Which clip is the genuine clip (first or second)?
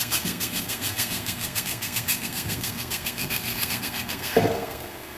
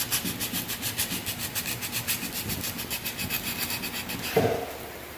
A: second